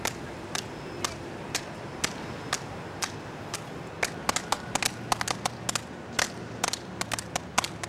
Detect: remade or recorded recorded